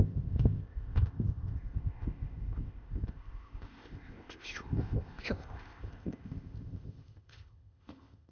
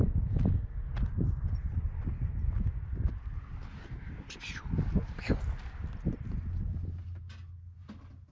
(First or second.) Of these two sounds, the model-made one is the first